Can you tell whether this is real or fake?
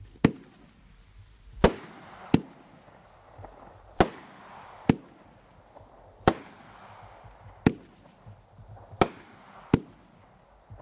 real